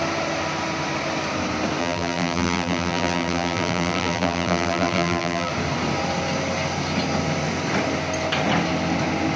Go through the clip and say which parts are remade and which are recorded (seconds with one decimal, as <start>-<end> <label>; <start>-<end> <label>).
0.0-1.8 recorded; 1.8-5.5 remade; 5.5-9.4 recorded